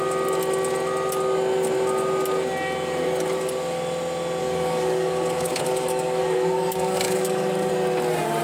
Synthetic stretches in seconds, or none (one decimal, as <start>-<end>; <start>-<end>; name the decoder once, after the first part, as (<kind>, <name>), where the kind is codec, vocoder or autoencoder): 4.4-7.7 (codec, DAC)